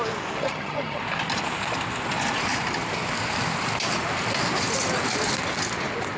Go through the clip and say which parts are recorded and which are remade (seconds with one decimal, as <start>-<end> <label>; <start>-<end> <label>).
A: 0.0-0.4 recorded; 0.4-1.0 remade; 1.0-6.2 recorded